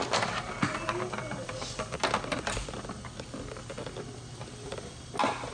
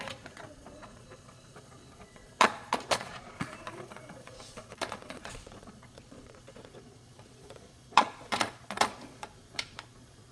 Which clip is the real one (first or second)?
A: first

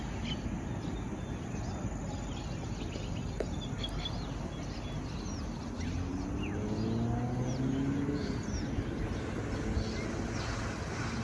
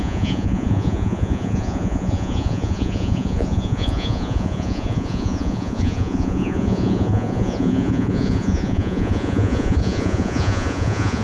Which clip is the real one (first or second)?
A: first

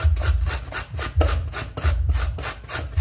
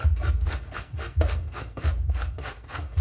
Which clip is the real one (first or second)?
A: first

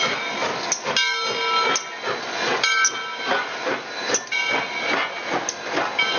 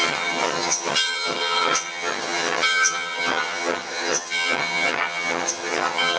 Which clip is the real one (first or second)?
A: first